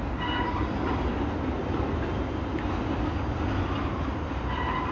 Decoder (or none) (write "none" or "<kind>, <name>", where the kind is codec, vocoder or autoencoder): none